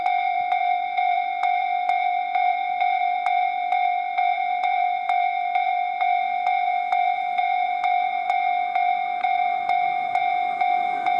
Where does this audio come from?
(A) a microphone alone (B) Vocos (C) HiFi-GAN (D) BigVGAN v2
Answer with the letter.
D